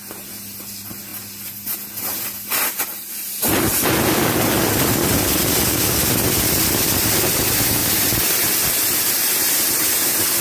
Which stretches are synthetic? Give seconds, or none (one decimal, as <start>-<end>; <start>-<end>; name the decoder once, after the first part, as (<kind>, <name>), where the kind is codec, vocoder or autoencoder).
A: none